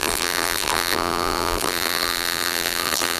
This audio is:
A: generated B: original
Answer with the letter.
A